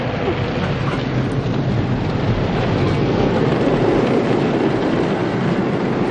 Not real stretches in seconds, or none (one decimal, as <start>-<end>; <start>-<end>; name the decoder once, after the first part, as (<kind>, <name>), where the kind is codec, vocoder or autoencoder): 2.8-3.4 (codec, SNAC)